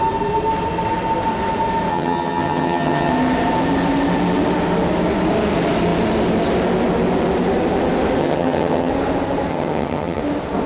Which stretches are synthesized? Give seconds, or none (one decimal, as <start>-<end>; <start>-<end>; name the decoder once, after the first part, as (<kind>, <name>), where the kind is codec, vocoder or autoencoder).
1.9-3.1 (vocoder, HiFi-GAN); 8.2-8.9; 9.5-10.2